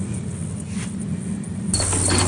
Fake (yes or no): no